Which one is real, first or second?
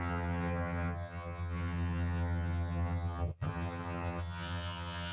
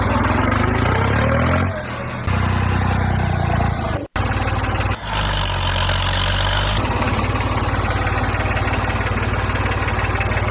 second